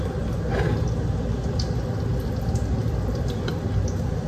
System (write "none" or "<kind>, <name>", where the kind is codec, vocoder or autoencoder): none